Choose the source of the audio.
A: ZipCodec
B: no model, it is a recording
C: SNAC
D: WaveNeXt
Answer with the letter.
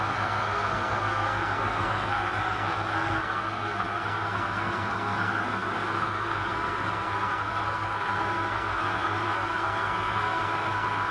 C